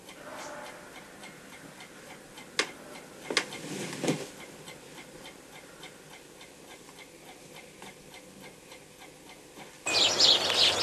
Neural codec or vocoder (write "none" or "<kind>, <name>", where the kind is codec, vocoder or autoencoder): none